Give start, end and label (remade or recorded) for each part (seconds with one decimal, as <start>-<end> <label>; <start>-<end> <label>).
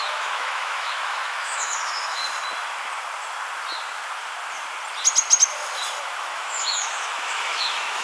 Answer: 0.0-2.2 remade; 2.2-6.0 recorded; 6.0-8.0 remade